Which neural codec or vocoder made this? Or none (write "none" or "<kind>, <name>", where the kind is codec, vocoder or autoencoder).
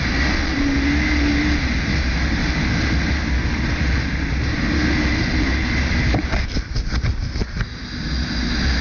none